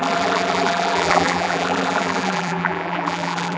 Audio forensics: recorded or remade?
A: remade